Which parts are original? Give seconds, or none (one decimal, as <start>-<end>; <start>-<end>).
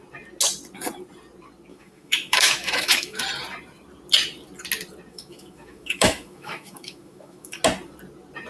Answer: 0.0-1.7; 3.2-5.1; 7.6-8.5